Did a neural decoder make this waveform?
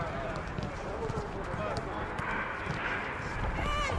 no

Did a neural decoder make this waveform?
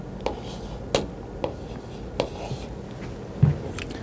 no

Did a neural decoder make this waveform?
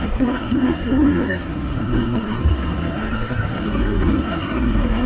yes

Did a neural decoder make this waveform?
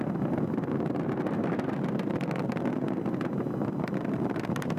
no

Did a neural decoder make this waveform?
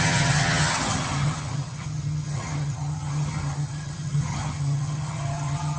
yes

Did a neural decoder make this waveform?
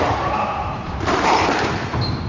yes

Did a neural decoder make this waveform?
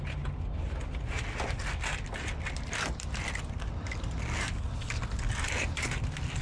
no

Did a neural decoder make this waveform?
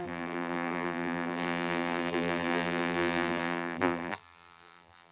yes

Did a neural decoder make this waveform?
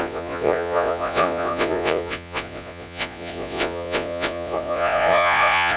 yes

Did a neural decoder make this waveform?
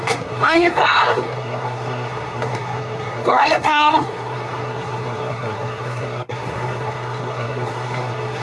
yes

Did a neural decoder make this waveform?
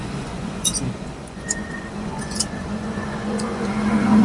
yes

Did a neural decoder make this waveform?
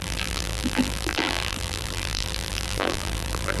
yes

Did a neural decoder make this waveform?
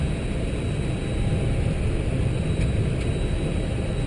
no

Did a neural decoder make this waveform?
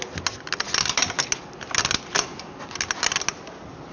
no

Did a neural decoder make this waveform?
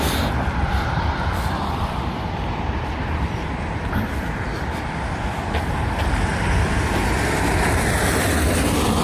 yes